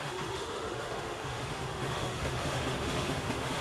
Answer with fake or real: fake